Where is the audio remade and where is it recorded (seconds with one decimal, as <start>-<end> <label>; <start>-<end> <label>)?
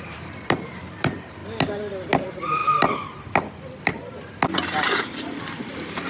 0.0-1.4 remade; 1.4-2.2 recorded; 2.2-2.6 remade; 2.6-5.4 recorded; 5.4-6.1 remade